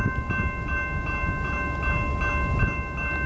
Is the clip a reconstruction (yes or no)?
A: no